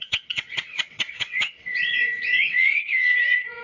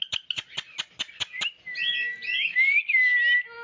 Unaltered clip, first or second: second